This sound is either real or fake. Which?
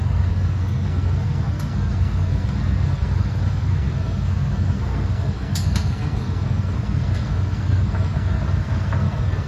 fake